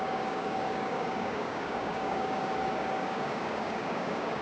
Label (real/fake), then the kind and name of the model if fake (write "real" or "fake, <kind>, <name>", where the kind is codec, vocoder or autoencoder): fake, codec, DAC